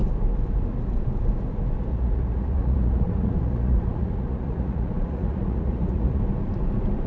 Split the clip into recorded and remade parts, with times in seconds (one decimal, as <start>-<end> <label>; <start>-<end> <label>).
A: 0.0-1.9 recorded; 1.9-6.2 remade; 6.2-7.1 recorded